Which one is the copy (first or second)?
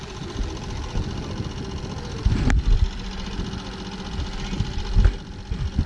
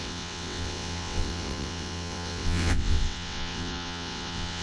second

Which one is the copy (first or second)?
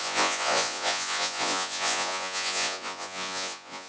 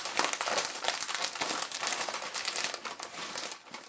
first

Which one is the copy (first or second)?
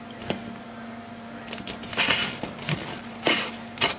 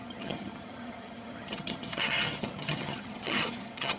second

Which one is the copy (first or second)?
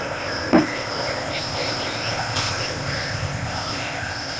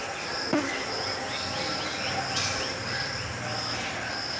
first